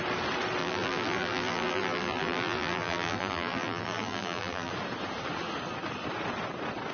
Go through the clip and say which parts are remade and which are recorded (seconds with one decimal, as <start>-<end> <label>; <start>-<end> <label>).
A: 0.0-0.6 recorded; 0.6-4.7 remade; 4.7-6.9 recorded